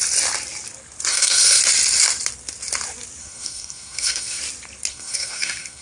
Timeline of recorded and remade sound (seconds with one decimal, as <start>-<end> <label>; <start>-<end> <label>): 0.0-1.1 recorded; 1.1-1.6 remade; 1.6-3.2 recorded; 3.2-4.4 remade; 4.4-4.9 recorded; 4.9-5.8 remade